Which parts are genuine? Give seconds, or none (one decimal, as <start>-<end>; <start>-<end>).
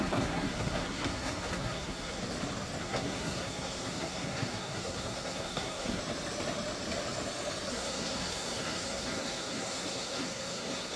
2.2-2.8; 6.0-7.7